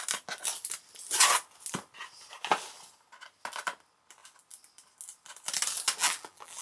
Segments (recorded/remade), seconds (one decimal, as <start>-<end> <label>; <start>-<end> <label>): 0.0-6.0 recorded; 6.0-6.6 remade